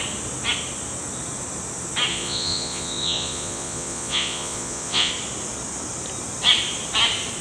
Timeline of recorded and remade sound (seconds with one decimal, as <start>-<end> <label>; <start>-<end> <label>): 0.0-2.1 recorded; 2.1-5.1 remade; 5.1-7.4 recorded